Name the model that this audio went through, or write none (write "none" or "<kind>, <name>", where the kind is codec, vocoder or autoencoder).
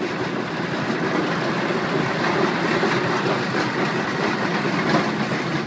none